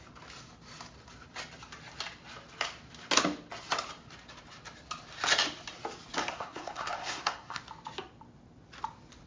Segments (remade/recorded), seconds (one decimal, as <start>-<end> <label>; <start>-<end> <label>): 0.0-6.2 recorded; 6.2-7.6 remade; 7.6-9.3 recorded